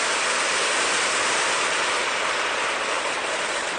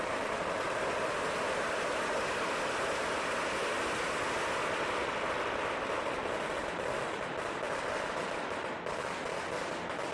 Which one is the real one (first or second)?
second